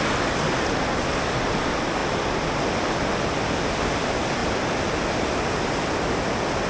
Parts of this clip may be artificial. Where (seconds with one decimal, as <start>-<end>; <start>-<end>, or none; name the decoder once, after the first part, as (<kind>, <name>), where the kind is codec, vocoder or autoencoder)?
none